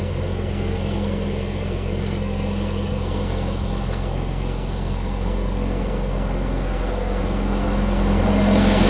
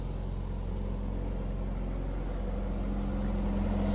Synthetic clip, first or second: first